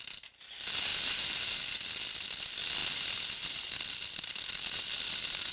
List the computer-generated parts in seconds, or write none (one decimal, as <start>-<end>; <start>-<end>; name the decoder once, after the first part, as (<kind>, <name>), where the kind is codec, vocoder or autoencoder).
none